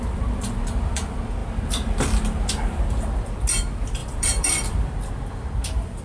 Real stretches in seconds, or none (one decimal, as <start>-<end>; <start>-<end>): 0.0-1.4; 3.4-4.0; 5.1-6.0